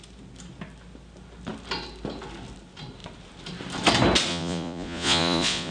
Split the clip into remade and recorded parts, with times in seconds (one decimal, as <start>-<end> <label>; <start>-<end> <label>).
0.0-4.3 recorded; 4.3-5.7 remade